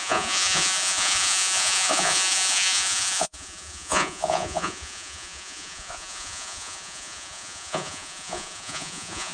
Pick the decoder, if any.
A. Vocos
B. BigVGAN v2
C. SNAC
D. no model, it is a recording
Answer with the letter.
A